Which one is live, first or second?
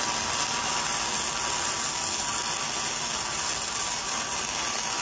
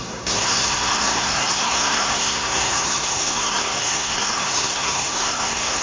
first